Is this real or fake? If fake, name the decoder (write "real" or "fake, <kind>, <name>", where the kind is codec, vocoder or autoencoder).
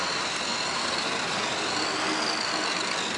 real